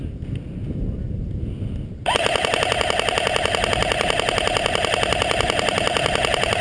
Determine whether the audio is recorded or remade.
recorded